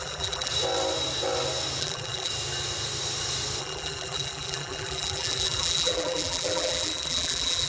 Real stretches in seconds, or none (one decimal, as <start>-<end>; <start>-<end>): 0.5-1.8; 2.3-3.6